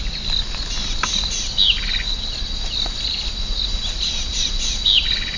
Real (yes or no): yes